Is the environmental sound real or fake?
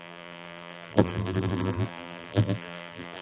fake